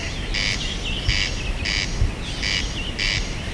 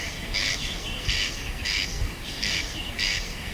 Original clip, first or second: first